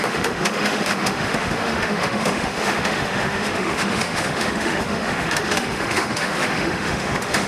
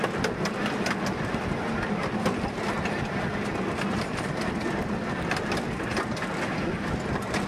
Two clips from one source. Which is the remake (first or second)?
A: first